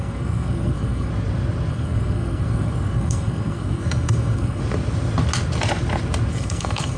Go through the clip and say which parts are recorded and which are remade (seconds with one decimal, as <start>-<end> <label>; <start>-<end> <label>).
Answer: 0.0-1.1 remade; 1.1-1.7 recorded; 1.7-4.6 remade; 4.6-6.3 recorded; 6.3-7.0 remade